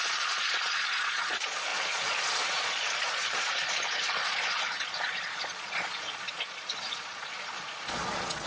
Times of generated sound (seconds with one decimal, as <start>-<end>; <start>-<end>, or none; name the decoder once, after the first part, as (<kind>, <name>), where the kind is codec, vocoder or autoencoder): 0.0-8.5 (vocoder, Vocos)